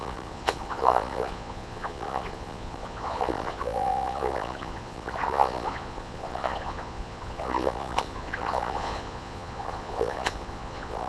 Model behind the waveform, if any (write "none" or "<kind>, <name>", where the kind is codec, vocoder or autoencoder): vocoder, Vocos